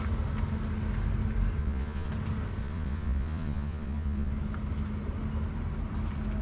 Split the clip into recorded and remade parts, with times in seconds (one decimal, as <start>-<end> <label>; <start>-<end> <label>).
0.0-1.6 recorded; 1.6-2.1 remade; 2.1-2.6 recorded; 2.6-4.3 remade; 4.3-6.4 recorded